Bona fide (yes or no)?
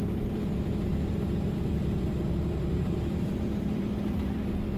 no